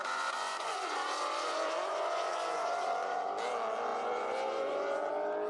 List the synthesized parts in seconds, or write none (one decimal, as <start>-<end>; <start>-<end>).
0.0-3.3; 3.9-5.1